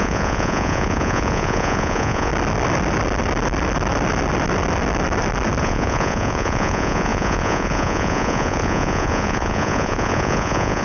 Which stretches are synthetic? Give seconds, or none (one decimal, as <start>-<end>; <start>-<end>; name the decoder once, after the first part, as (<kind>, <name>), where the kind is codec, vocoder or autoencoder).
0.0-2.3 (vocoder, Vocos); 5.6-10.8